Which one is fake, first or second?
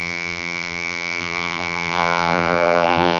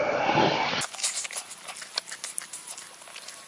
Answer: first